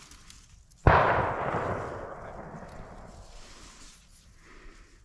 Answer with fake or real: real